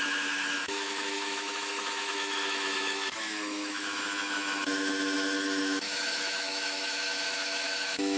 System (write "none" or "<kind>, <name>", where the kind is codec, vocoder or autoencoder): autoencoder, DAC-VAE